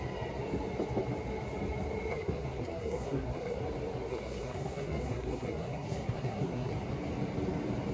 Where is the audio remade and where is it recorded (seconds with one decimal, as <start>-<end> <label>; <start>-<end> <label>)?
0.0-2.1 recorded; 2.1-3.6 remade; 3.6-4.1 recorded; 4.1-6.7 remade; 6.7-7.9 recorded